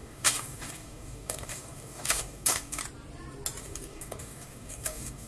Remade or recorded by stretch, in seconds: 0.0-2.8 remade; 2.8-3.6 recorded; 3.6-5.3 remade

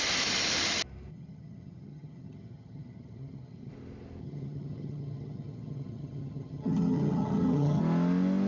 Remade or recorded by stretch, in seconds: 0.0-1.1 recorded; 1.1-3.7 remade; 3.7-4.2 recorded; 4.2-7.8 remade; 7.8-8.5 recorded

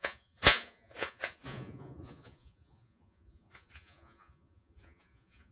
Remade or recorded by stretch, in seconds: 0.0-5.5 remade

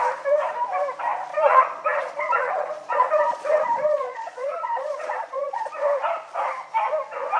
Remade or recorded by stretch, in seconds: 0.0-1.3 recorded; 1.3-5.7 remade; 5.7-7.4 recorded